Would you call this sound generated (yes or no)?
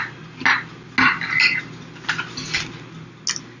no